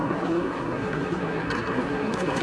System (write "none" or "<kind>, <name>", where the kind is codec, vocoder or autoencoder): codec, SNAC